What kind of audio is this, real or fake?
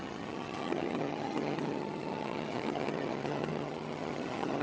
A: fake